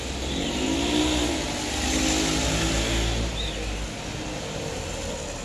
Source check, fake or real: real